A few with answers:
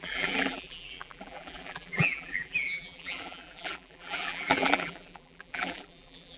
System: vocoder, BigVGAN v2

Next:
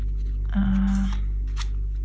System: none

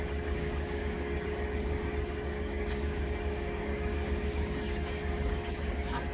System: codec, DAC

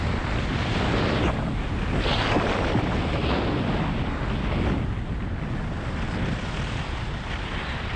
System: none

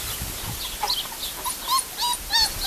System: none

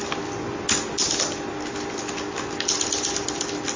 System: none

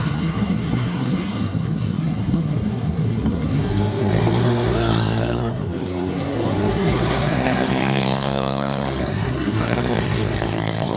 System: codec, SNAC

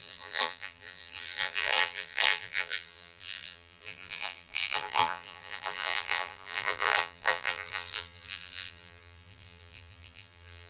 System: vocoder, BigVGAN v2